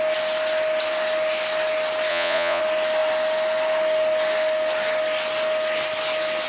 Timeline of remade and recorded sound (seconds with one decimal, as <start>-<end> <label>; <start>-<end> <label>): 0.0-2.1 recorded; 2.1-2.6 remade; 2.6-6.5 recorded